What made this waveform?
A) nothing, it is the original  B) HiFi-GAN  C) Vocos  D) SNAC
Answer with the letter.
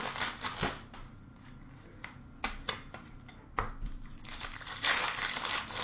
A